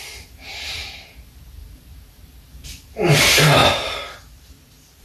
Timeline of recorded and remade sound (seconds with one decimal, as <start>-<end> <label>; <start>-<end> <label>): 0.0-5.0 remade